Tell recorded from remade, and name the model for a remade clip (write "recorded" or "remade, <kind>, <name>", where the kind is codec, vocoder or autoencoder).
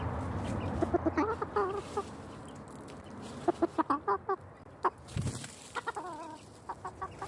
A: recorded